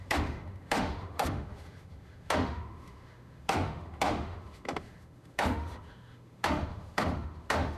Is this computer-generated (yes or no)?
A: yes